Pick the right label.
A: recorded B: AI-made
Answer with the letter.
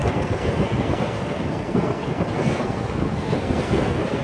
B